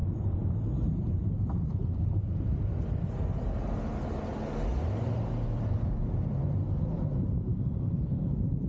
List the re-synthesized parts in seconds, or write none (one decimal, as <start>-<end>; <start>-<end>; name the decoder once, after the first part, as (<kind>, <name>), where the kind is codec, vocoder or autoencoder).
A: 0.0-2.9 (vocoder, BigVGAN v2); 4.7-7.0; 7.5-8.7